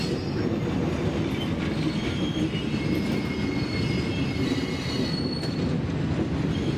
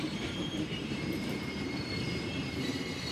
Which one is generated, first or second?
second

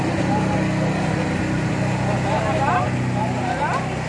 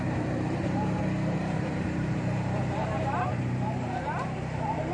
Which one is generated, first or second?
second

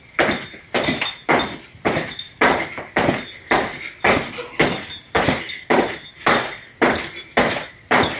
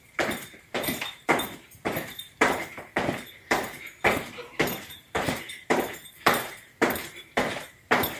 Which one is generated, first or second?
second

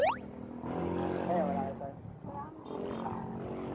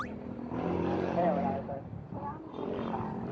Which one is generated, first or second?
second